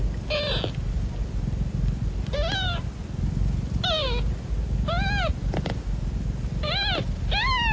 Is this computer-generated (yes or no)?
no